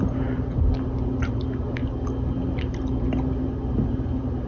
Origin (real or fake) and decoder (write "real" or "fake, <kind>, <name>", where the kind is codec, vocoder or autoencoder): real